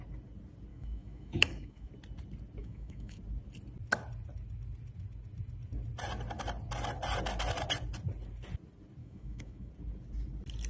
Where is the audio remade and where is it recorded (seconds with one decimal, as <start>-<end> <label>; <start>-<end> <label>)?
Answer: 0.0-0.7 recorded; 0.7-1.9 remade; 1.9-2.6 recorded; 2.6-3.2 remade; 3.2-9.0 recorded; 9.0-9.7 remade; 9.7-10.7 recorded